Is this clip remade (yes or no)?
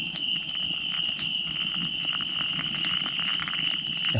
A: no